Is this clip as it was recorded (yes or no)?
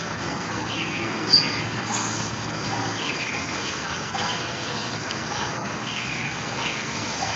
no